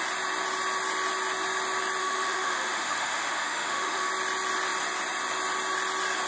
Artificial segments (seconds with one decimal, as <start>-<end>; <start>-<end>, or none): 2.0-4.1